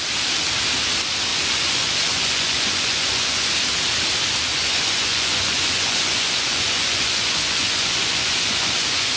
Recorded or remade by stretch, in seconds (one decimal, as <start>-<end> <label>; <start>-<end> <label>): 0.0-1.3 recorded; 1.3-3.5 remade; 3.5-4.5 recorded; 4.5-9.2 remade